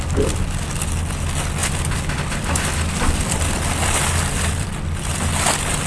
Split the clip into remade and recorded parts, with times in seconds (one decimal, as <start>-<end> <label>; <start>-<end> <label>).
0.0-1.6 recorded; 1.6-5.1 remade; 5.1-5.9 recorded